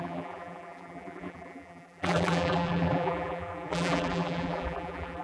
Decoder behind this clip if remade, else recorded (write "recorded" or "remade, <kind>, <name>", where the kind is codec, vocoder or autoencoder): remade, vocoder, BigVGAN v2